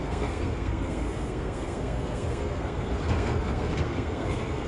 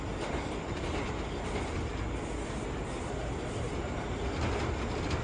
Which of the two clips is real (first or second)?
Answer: second